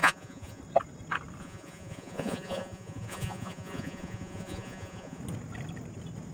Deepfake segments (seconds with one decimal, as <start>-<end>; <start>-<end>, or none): 0.0-0.6; 1.4-5.2